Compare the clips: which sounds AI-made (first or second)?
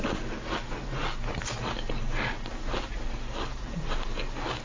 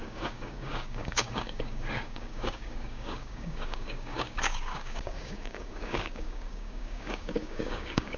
second